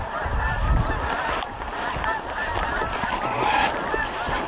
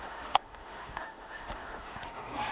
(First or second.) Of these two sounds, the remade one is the second